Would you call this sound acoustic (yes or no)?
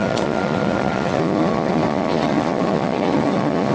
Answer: no